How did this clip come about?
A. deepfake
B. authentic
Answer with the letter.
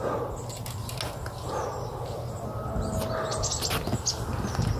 B